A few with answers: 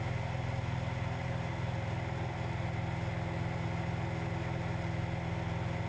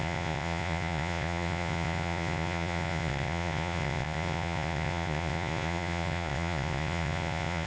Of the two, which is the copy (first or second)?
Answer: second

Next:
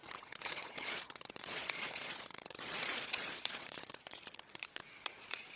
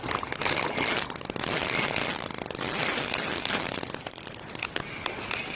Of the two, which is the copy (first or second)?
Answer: first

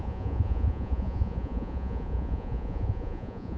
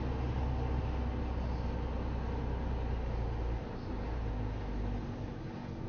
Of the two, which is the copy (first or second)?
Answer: first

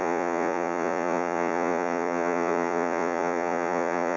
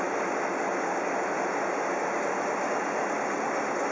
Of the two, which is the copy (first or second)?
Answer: first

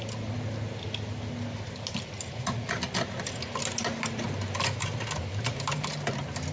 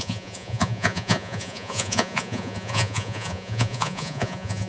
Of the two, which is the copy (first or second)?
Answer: second